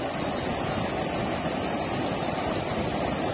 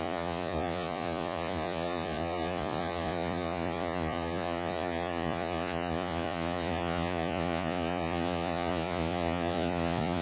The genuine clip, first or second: first